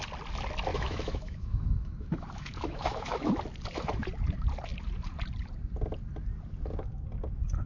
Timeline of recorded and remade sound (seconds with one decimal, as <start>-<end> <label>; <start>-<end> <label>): 0.0-0.7 recorded; 0.7-3.3 remade; 3.3-7.7 recorded